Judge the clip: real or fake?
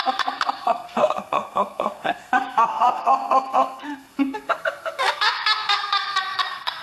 fake